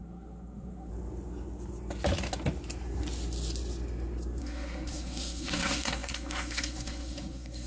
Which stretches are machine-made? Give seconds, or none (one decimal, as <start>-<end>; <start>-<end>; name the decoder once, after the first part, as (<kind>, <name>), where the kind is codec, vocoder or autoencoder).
0.0-0.9 (codec, SNAC); 4.4-7.7